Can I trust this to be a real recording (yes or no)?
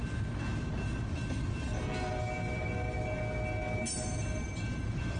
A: yes